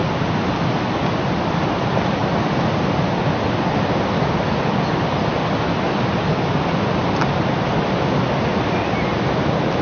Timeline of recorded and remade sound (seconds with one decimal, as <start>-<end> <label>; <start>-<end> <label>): 0.0-9.8 recorded